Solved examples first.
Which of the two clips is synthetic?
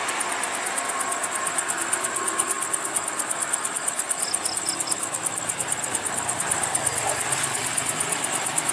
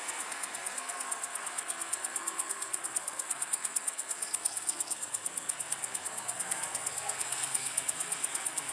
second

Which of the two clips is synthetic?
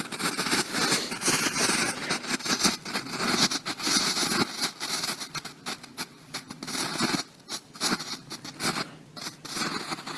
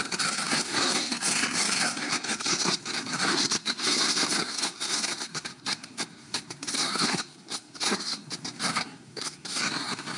second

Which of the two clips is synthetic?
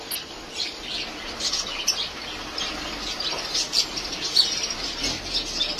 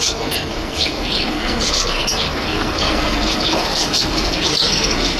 second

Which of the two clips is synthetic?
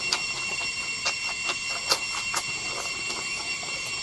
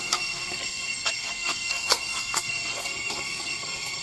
second